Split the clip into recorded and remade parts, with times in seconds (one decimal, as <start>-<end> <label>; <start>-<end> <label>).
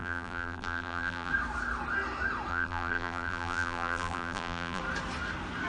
0.0-1.3 remade; 1.3-2.5 recorded; 2.5-4.8 remade; 4.8-5.7 recorded